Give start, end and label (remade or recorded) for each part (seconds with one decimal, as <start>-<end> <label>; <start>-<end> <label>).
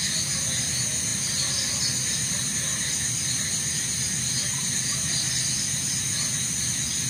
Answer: 0.0-7.1 recorded